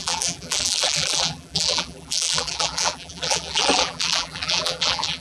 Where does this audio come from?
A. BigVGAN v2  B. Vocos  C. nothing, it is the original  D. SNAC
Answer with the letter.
A